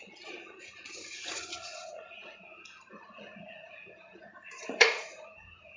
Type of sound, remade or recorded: remade